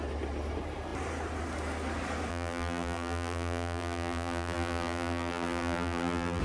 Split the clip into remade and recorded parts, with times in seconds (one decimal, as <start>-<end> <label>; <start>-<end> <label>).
0.0-2.3 recorded; 2.3-6.4 remade